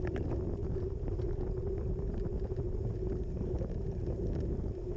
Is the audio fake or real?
real